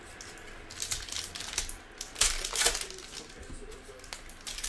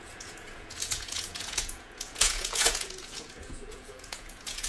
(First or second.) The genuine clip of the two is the first